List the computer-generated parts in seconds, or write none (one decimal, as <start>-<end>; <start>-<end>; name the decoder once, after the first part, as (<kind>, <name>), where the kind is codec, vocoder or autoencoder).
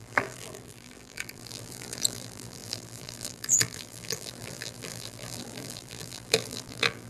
0.0-7.1 (vocoder, BigVGAN v2)